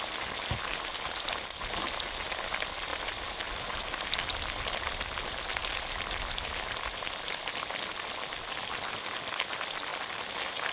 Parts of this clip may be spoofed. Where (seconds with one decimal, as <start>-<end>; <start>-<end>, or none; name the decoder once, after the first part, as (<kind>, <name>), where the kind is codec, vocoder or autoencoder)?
none